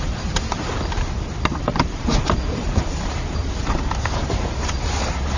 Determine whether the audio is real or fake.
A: fake